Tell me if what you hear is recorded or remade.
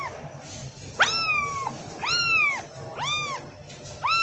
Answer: recorded